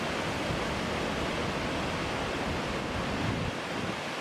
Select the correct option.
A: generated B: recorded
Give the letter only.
B